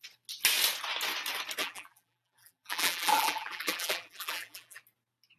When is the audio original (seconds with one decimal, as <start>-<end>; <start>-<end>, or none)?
0.0-1.6; 4.8-5.4